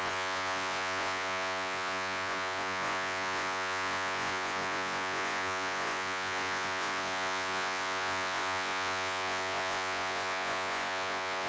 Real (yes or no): no